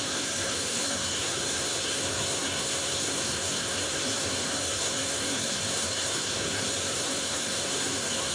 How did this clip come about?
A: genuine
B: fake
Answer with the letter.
B